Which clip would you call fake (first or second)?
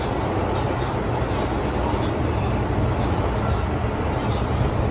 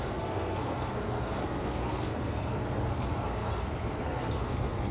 second